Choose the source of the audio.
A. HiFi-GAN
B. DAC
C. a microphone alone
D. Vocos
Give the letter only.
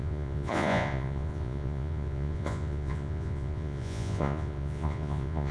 D